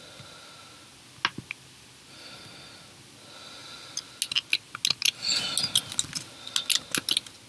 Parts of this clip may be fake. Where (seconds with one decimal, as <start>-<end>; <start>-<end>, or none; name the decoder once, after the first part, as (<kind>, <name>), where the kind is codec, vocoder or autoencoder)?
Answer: none